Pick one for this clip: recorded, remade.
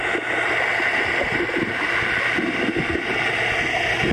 recorded